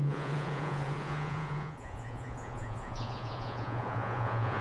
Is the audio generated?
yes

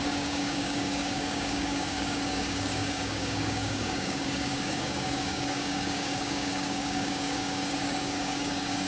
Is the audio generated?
yes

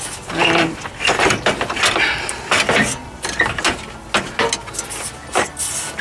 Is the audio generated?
no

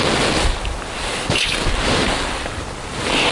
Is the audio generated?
no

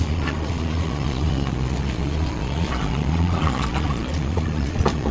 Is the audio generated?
yes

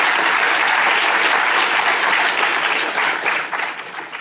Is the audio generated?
no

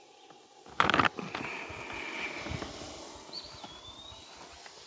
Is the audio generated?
no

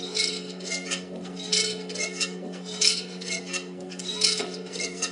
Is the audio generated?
yes